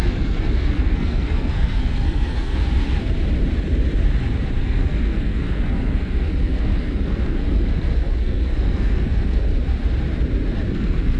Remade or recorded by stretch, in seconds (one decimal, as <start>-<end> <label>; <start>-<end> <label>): 0.0-2.6 remade; 2.6-4.6 recorded; 4.6-9.5 remade; 9.5-10.7 recorded; 10.7-11.2 remade